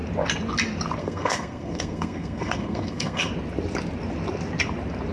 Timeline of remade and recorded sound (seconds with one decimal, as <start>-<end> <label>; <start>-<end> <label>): 0.0-1.0 recorded; 1.0-3.3 remade; 3.3-5.1 recorded